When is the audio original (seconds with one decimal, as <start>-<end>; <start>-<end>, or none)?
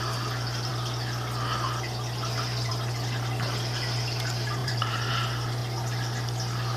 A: 0.0-4.6; 5.1-6.8